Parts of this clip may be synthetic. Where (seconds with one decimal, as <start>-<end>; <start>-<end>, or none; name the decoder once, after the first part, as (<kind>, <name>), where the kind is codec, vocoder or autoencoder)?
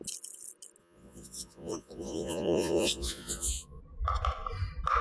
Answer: 0.8-3.8 (vocoder, Vocos)